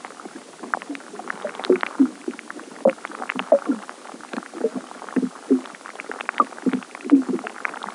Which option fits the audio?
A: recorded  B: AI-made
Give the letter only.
A